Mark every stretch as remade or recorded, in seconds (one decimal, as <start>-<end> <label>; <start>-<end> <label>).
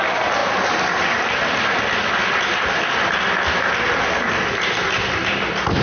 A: 0.0-5.8 recorded